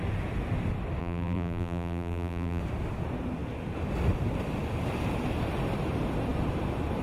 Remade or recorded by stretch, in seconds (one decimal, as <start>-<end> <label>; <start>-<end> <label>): 0.0-1.0 recorded; 1.0-2.6 remade; 2.6-7.0 recorded